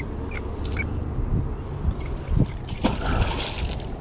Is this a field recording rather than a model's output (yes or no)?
yes